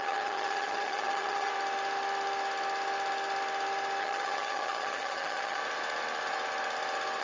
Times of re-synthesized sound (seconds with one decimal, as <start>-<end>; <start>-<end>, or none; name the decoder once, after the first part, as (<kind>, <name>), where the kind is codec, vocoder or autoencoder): 0.0-1.5 (vocoder, HiFi-GAN); 4.0-5.6